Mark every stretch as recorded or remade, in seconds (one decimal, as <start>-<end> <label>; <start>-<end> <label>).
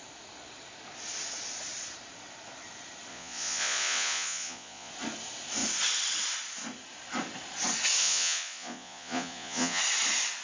0.0-3.1 recorded; 3.1-4.9 remade; 4.9-8.0 recorded; 8.0-9.8 remade; 9.8-10.4 recorded